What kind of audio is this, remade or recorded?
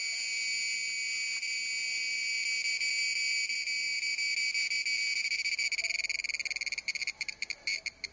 recorded